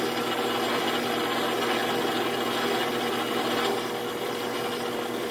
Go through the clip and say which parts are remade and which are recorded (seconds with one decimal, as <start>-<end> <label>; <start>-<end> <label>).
0.0-5.3 recorded